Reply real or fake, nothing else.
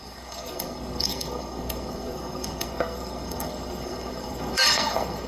fake